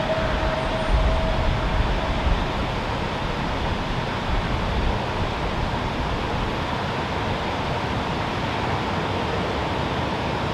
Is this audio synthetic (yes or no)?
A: no